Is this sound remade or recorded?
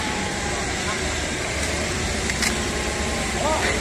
remade